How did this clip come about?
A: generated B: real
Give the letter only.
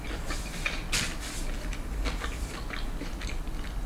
B